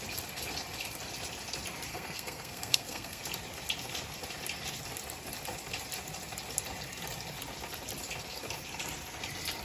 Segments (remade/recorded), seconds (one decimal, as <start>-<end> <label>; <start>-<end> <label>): 0.0-1.9 recorded; 1.9-3.2 remade; 3.2-9.6 recorded